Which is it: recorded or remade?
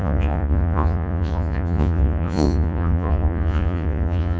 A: remade